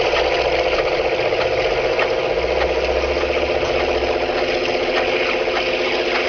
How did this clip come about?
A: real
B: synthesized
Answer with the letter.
A